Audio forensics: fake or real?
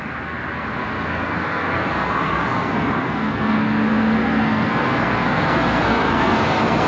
fake